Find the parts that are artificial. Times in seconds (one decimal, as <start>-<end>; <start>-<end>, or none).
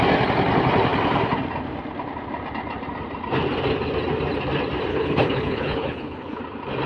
4.9-6.4